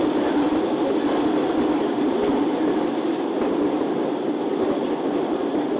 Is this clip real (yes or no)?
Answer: yes